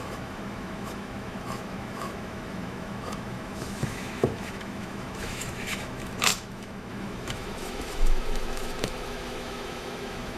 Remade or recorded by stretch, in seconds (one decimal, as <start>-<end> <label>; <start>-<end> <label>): 0.0-10.4 remade